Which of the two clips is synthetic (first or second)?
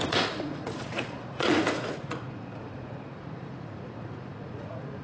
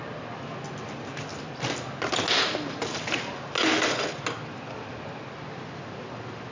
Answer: first